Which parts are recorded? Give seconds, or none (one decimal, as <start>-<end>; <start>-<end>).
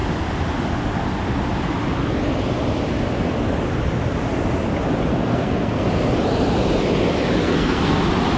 0.0-5.1; 5.9-7.4; 8.0-8.4